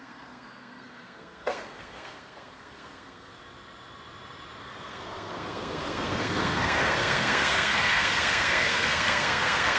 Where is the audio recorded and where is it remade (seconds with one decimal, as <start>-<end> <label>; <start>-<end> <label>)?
0.0-3.3 remade; 3.3-4.6 recorded; 4.6-9.8 remade